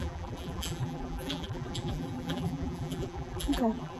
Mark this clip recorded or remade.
remade